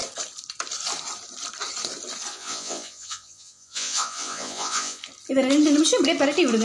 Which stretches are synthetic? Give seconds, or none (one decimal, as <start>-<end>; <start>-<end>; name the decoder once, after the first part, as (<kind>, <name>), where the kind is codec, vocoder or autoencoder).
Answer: 2.3-5.0 (vocoder, Vocos)